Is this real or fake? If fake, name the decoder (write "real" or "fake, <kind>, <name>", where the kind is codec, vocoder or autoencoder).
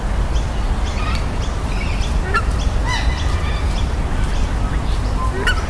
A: real